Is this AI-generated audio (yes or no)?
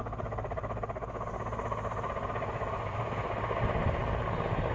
no